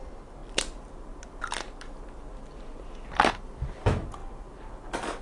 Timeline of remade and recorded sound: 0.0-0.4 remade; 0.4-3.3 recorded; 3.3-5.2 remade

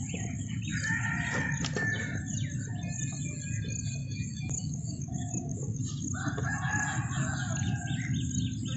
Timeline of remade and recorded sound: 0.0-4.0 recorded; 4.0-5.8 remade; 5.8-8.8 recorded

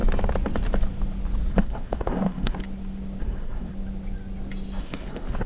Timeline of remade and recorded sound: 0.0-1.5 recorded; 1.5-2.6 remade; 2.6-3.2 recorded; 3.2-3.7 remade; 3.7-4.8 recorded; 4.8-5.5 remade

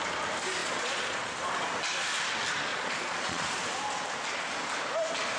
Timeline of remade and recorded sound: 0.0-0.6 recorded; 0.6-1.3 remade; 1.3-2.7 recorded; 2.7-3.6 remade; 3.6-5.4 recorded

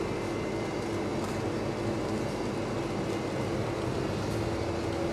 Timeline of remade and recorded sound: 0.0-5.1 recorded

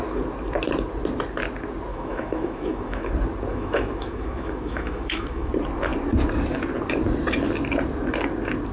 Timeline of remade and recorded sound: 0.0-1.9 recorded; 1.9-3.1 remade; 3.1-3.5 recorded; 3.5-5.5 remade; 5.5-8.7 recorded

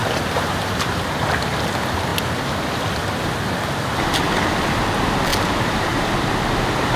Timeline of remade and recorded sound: 0.0-1.0 remade; 1.0-5.3 recorded; 5.3-6.0 remade; 6.0-7.0 recorded

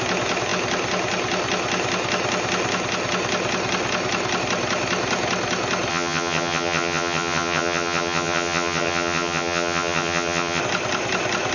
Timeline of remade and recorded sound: 0.0-5.9 recorded; 5.9-10.6 remade; 10.6-11.5 recorded